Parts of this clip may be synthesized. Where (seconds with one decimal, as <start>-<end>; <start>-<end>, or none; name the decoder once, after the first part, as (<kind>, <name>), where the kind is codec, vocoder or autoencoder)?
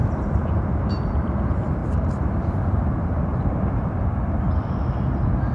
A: 0.0-0.9 (vocoder, BigVGAN v2); 1.8-3.9